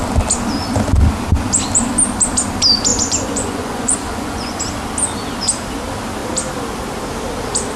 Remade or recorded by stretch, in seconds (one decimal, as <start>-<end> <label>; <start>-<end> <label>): 0.0-2.9 recorded; 2.9-4.6 remade; 4.6-7.8 recorded

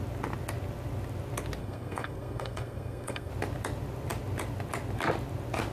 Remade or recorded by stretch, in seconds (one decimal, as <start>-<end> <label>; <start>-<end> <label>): 0.0-1.6 recorded; 1.6-3.3 remade; 3.3-5.7 recorded

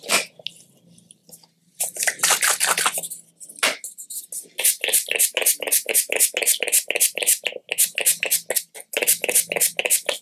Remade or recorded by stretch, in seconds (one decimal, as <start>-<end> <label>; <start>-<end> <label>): 0.0-10.2 recorded

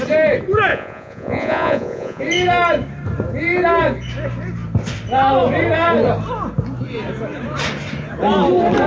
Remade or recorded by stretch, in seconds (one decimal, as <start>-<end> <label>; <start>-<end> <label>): 0.0-0.7 recorded; 0.7-2.2 remade; 2.2-8.9 recorded

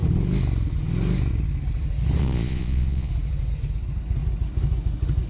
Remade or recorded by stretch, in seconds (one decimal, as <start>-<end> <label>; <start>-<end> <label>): 0.0-2.2 recorded; 2.2-3.1 remade; 3.1-5.3 recorded

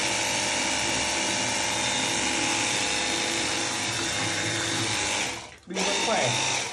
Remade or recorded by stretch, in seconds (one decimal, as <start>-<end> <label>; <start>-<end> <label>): 0.0-6.7 recorded

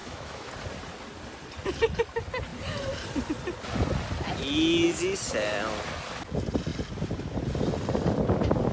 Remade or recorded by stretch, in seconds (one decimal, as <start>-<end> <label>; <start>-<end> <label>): 0.0-0.5 remade; 0.5-8.7 recorded

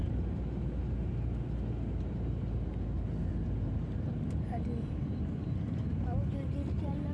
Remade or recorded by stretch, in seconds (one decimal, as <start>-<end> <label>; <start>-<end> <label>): 0.0-7.1 recorded